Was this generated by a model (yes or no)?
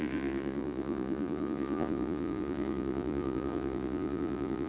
yes